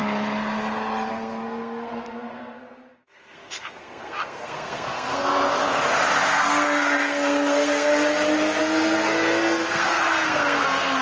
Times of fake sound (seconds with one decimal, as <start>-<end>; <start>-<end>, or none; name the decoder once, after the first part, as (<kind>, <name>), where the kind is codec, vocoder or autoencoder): 1.1-5.3 (codec, SNAC); 6.2-7.9; 8.6-11.0

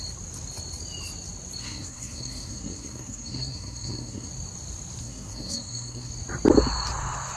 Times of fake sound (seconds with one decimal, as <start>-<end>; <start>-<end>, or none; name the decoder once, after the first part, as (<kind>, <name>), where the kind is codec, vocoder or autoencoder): 1.6-4.3 (codec, SNAC); 5.0-6.1

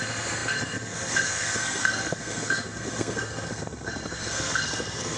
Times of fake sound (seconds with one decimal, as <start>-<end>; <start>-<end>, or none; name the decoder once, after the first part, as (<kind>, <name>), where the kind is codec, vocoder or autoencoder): 0.0-5.2 (codec, SNAC)

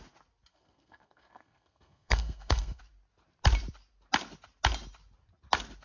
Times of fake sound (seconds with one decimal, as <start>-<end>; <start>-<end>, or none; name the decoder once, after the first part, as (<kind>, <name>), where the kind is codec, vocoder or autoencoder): 0.5-2.8 (codec, SNAC)

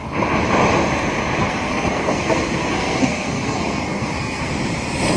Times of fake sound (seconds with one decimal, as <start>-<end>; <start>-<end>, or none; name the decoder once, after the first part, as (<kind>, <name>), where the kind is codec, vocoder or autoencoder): 1.4-4.5 (codec, SNAC)

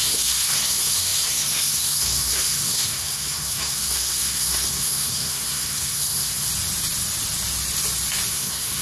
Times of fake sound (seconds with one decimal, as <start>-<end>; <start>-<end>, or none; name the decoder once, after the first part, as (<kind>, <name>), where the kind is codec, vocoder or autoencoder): 0.0-6.5 (codec, SNAC); 8.3-8.8